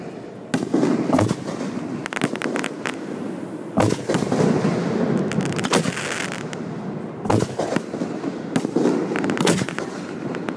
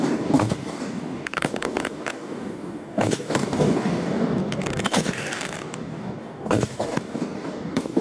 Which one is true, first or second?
first